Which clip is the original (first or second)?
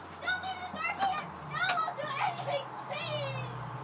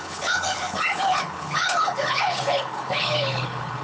first